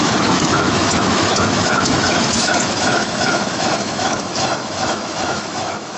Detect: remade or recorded remade